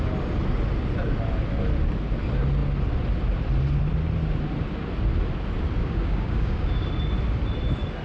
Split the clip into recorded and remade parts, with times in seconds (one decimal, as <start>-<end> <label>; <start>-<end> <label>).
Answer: 0.0-5.8 recorded; 5.8-7.0 remade; 7.0-8.0 recorded